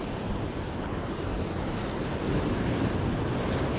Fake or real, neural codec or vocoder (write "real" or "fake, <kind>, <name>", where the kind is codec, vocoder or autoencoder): real